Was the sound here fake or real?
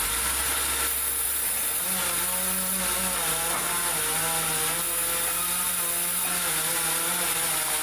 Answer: real